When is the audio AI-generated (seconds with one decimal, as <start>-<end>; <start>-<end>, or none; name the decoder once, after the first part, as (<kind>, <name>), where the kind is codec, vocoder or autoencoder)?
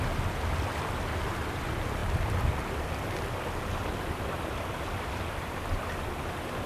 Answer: none